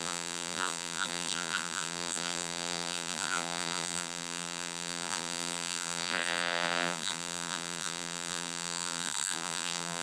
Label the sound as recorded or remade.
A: remade